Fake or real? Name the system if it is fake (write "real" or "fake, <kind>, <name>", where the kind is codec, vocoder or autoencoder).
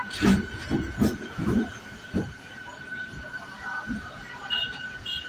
fake, vocoder, Vocos